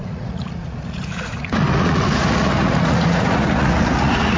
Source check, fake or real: fake